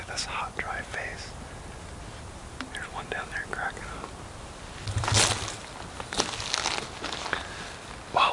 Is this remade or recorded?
recorded